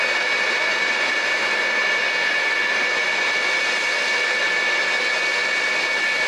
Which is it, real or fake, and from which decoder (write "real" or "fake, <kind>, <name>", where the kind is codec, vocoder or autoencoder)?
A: real